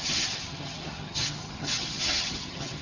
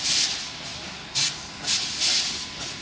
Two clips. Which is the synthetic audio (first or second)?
first